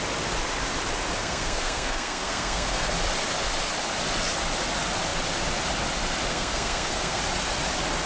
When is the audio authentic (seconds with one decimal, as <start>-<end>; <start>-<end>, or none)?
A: 0.0-1.2; 2.9-6.3; 7.2-8.1